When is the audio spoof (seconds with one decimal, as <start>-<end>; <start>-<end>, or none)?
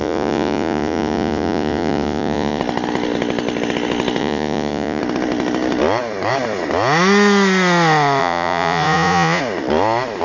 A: 0.0-2.6; 4.2-5.0; 8.2-9.4